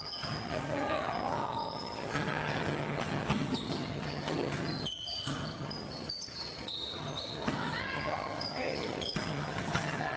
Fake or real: fake